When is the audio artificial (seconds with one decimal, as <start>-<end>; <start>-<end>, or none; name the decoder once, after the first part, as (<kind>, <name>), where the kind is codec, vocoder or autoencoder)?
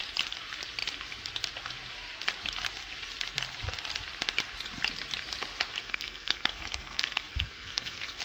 5.8-8.2 (codec, SNAC)